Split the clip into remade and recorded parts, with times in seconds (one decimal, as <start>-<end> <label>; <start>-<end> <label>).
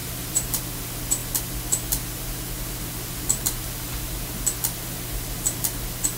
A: 0.0-0.6 remade; 0.6-6.2 recorded